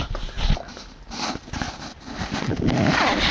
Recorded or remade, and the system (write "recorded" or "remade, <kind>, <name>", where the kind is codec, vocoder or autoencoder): recorded